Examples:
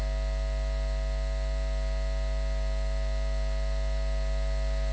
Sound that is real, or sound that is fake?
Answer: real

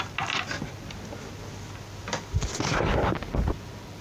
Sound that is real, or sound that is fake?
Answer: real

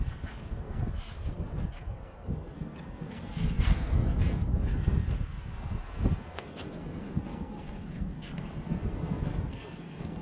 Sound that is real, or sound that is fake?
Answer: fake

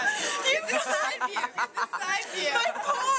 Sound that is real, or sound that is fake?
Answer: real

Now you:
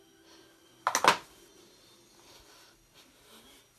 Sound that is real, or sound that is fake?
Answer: real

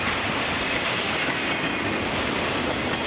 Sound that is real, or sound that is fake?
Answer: real